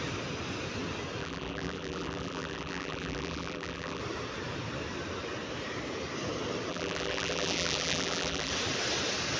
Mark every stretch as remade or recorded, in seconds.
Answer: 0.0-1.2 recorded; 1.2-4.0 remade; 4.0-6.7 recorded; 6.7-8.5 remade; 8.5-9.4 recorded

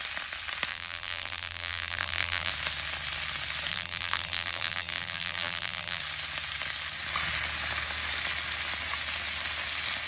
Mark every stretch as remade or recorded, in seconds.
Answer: 0.0-0.7 recorded; 0.7-2.5 remade; 2.5-3.7 recorded; 3.7-6.0 remade; 6.0-10.1 recorded